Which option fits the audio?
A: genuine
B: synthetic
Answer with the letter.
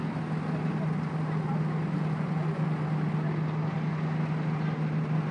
A